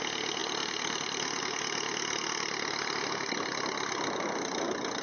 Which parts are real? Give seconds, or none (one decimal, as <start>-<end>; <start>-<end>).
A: 0.0-0.4; 1.4-3.5

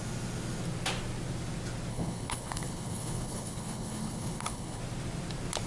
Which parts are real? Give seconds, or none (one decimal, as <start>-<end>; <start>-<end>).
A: 0.0-1.9; 4.8-5.7

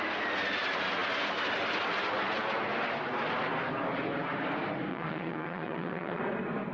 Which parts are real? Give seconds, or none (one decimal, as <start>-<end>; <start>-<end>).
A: 0.0-4.9; 6.2-6.7

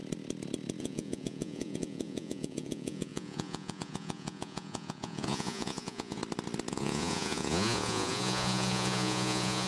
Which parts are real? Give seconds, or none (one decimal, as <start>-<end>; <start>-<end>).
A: 0.0-0.8; 6.2-6.7

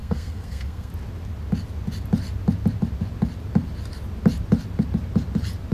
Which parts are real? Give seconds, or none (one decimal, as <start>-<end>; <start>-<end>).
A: 0.9-5.7

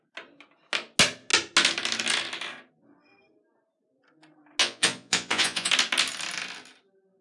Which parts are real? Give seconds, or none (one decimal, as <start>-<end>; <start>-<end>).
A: 0.0-4.6; 5.7-7.2

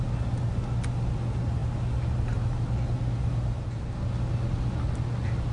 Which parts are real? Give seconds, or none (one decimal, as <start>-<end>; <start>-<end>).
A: 0.0-5.5